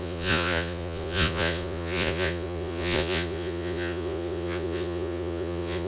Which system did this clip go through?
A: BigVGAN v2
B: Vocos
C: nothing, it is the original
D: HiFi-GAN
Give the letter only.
B